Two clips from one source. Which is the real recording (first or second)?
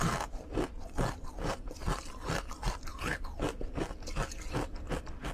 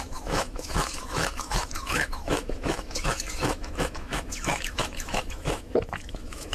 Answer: first